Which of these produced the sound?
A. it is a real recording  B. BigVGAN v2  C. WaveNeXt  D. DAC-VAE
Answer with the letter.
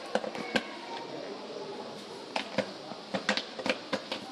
A